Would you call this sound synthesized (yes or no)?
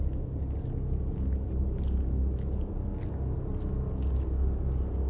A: no